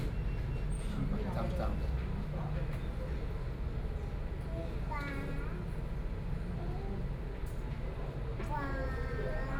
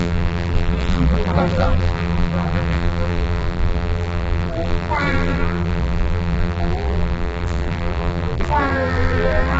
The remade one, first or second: second